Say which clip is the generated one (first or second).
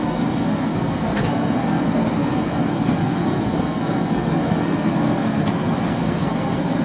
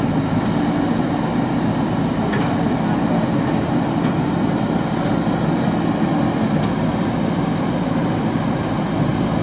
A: first